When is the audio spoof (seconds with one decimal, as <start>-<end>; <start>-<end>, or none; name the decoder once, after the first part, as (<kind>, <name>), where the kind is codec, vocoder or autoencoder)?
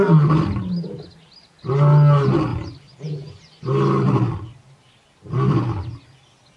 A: none